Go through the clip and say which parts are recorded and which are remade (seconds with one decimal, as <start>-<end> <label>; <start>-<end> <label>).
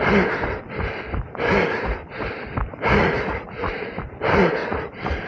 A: 0.0-3.0 recorded; 3.0-3.9 remade; 3.9-4.6 recorded; 4.6-5.3 remade